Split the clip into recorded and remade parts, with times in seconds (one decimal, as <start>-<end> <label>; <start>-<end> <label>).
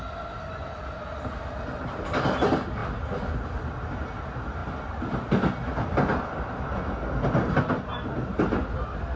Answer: 0.0-9.2 recorded